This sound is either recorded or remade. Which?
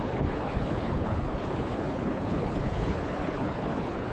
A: remade